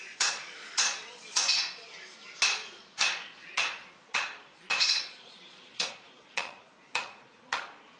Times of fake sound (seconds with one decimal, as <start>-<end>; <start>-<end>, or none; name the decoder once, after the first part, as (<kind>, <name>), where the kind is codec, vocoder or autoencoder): 0.0-1.9 (vocoder, Vocos); 2.5-8.0